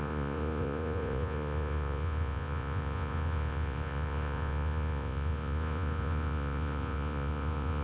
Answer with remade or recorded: remade